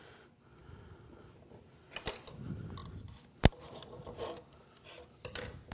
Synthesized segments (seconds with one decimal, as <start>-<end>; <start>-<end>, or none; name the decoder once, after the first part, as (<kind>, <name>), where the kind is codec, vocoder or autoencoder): none